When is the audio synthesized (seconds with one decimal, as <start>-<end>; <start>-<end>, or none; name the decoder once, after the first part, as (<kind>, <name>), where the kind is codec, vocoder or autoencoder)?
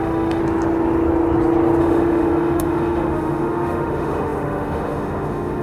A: 0.0-0.4 (autoencoder, DAC-VAE); 1.8-5.6